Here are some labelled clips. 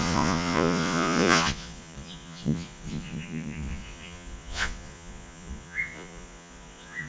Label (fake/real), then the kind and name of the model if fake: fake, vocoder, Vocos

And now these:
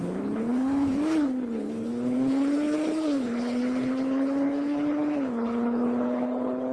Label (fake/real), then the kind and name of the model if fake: fake, codec, HILCodec